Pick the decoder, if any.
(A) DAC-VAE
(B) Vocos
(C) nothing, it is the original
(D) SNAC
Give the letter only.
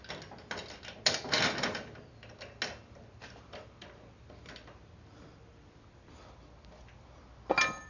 C